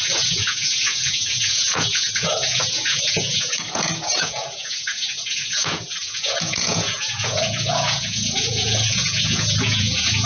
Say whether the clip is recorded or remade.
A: remade